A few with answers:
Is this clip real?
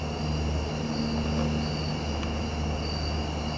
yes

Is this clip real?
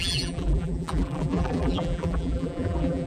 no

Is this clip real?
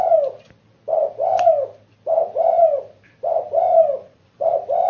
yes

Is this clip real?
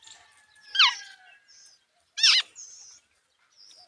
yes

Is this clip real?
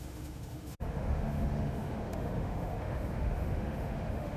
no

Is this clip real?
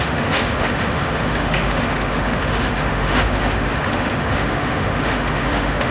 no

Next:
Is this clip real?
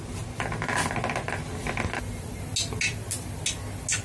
yes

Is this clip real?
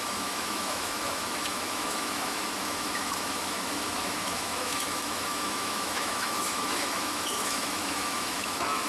no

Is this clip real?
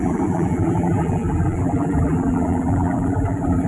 no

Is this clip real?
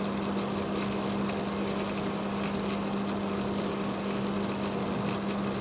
yes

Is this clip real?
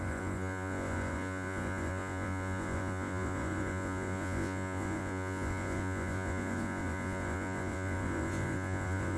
no